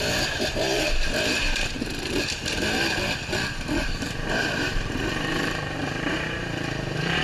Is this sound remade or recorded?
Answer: remade